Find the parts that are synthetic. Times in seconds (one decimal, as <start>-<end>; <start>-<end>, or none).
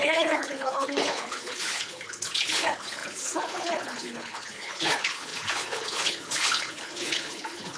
0.0-7.8